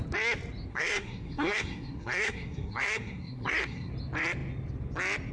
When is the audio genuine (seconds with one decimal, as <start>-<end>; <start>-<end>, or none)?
0.0-0.7; 3.9-5.3